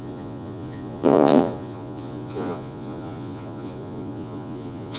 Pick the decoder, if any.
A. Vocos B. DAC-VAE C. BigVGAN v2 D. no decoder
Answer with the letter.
A